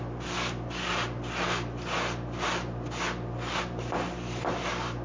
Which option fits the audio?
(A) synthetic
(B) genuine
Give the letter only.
B